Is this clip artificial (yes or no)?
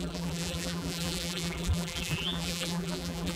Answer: yes